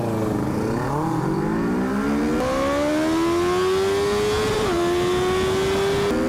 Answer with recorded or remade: recorded